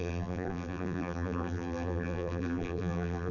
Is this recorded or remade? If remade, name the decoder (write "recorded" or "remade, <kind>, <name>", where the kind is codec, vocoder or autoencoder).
remade, vocoder, BigVGAN v2